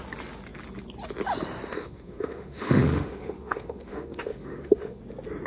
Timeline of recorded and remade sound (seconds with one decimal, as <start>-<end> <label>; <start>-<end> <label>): 0.0-1.7 recorded; 1.7-5.0 remade; 5.0-5.5 recorded